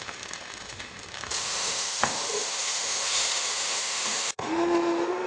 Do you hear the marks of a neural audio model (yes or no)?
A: yes